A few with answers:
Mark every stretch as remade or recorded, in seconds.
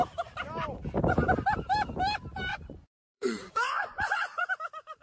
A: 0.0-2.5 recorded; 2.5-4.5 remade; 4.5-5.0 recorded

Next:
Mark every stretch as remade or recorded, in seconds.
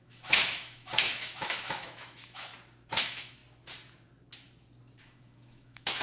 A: 0.0-2.5 remade; 2.5-3.0 recorded; 3.0-3.4 remade; 3.4-5.0 recorded; 5.0-6.0 remade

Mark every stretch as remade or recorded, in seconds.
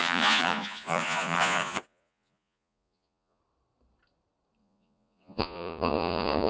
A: 0.0-3.4 remade; 3.4-4.6 recorded; 4.6-6.5 remade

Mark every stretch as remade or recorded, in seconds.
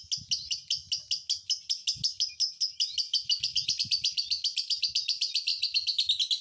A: 0.0-6.4 recorded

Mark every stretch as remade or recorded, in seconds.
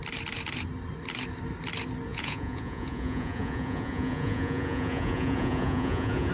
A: 0.0-2.1 recorded; 2.1-6.3 remade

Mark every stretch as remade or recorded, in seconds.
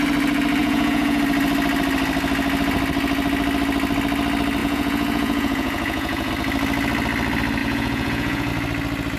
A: 0.0-0.6 recorded; 0.6-1.2 remade; 1.2-4.6 recorded; 4.6-6.3 remade; 6.3-7.6 recorded; 7.6-8.5 remade; 8.5-9.2 recorded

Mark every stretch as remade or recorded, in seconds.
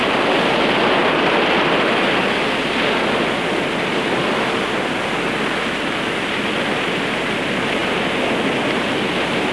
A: 0.0-9.5 recorded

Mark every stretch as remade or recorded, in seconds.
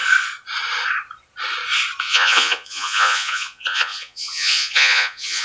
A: 0.0-2.0 recorded; 2.0-5.4 remade